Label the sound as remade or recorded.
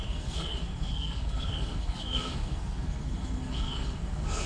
remade